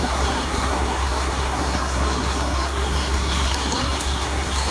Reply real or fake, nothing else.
fake